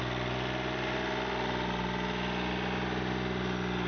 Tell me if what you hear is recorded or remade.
recorded